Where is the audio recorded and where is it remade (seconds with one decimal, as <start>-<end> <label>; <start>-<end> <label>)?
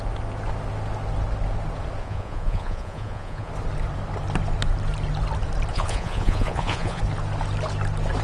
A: 0.0-2.0 recorded; 2.0-3.5 remade; 3.5-5.7 recorded; 5.7-7.0 remade; 7.0-8.2 recorded